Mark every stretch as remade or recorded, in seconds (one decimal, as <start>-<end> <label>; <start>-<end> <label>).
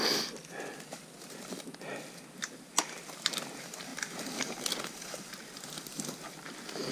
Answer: 0.0-6.9 recorded